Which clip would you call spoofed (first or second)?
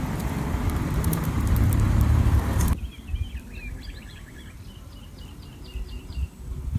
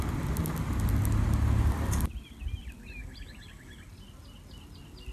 first